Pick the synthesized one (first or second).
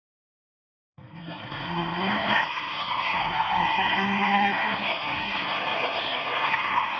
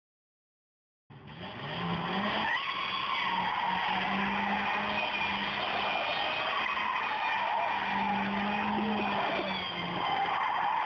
first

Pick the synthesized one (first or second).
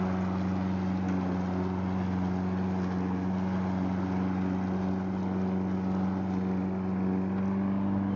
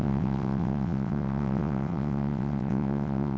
second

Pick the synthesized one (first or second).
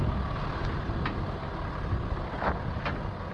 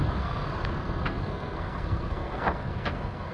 second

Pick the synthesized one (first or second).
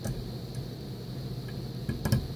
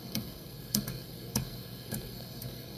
second